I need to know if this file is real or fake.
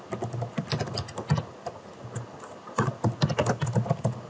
real